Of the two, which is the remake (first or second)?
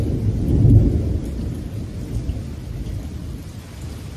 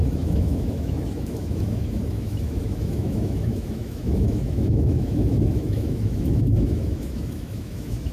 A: second